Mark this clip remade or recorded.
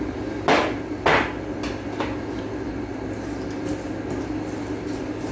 recorded